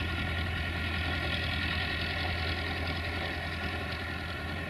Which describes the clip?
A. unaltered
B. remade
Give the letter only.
A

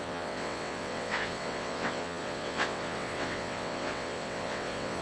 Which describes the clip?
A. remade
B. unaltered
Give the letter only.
A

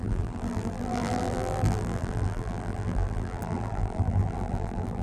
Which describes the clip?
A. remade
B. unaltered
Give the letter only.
A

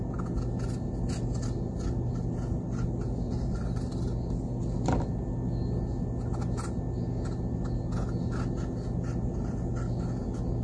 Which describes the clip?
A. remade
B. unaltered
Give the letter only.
B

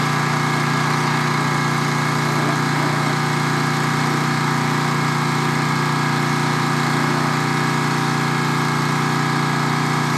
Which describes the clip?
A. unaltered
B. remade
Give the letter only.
A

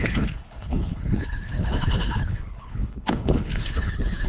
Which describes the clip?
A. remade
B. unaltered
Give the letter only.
A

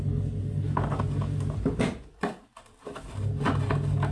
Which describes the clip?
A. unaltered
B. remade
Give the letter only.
A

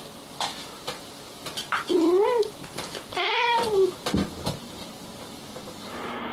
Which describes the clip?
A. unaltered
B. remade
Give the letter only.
A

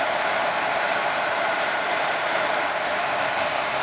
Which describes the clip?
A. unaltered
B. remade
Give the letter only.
B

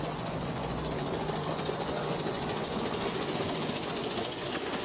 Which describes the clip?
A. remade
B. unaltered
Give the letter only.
A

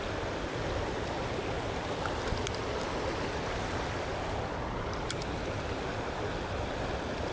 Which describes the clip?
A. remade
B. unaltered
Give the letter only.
B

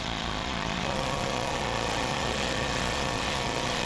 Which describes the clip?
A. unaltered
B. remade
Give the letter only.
B